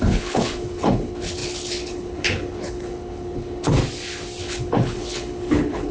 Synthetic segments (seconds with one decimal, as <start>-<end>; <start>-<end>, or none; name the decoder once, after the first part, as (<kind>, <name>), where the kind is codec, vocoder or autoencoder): 0.0-3.8 (codec, HILCodec); 4.4-5.9